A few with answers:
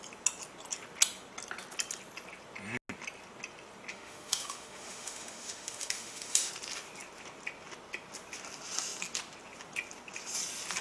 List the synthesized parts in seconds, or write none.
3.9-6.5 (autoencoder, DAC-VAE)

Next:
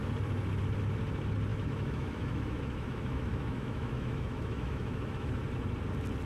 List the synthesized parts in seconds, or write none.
1.5-5.3 (autoencoder, DAC-VAE)

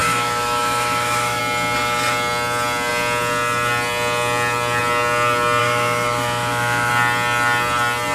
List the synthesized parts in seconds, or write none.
0.0-1.4 (autoencoder, DAC-VAE); 5.6-6.9

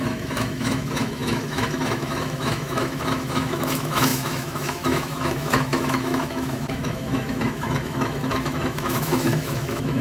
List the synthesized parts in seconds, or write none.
0.0-10.0 (autoencoder, DAC-VAE)

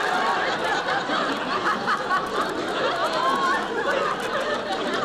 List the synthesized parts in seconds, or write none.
none

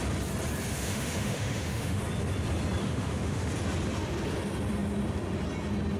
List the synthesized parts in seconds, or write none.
0.7-2.0 (autoencoder, DAC-VAE); 2.8-3.5

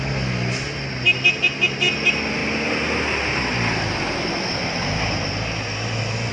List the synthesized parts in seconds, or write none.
none

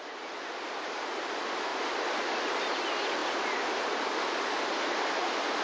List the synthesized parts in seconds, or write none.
none